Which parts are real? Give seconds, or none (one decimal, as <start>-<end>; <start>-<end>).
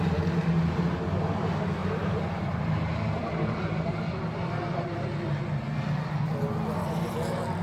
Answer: 0.0-1.8; 4.0-7.6